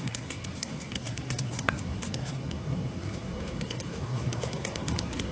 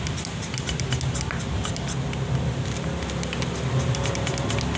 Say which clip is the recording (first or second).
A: second